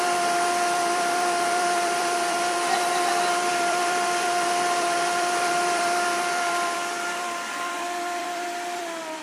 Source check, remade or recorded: remade